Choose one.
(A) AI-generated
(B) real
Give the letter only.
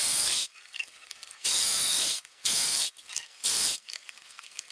A